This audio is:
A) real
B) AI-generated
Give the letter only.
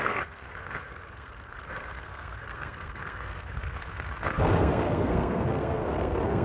B